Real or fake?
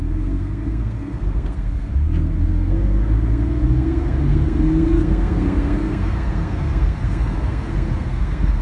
fake